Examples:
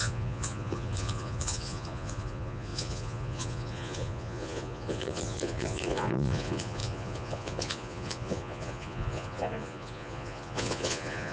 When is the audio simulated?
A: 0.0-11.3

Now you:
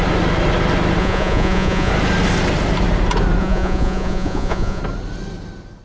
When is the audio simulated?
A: 1.0-1.9; 3.4-4.8

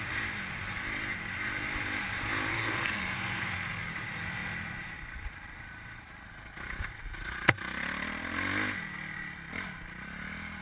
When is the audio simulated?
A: 2.5-3.9